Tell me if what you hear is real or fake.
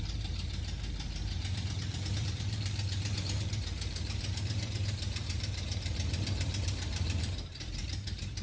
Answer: fake